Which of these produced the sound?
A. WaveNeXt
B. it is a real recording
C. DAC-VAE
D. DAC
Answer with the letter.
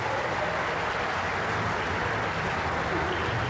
B